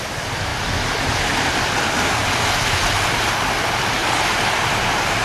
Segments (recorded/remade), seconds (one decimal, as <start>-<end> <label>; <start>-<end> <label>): 0.0-0.5 remade; 0.5-1.5 recorded; 1.5-2.2 remade; 2.2-2.8 recorded; 2.8-4.0 remade; 4.0-4.6 recorded; 4.6-5.2 remade